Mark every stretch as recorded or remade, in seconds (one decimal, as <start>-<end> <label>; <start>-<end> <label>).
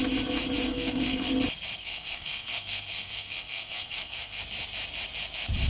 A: 0.0-0.7 recorded; 0.7-1.3 remade; 1.3-1.8 recorded; 1.8-4.4 remade; 4.4-5.7 recorded